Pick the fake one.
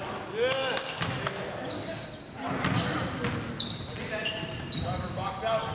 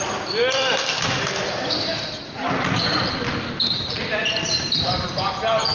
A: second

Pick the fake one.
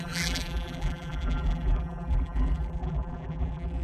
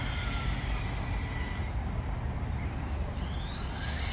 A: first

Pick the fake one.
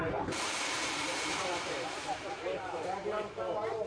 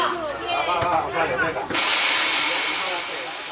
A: first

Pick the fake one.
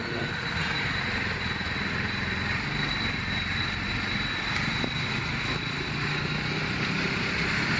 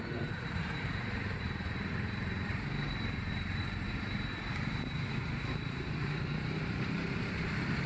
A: second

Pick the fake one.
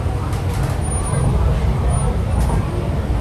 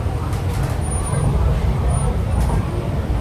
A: second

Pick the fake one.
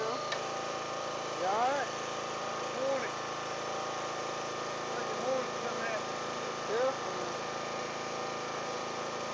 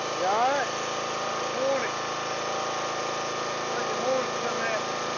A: first